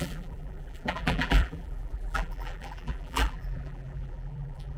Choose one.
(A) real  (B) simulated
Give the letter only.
B